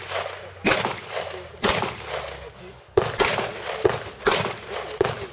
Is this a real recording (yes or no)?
yes